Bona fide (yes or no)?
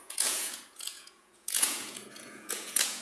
no